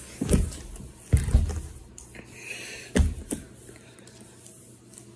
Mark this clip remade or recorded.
recorded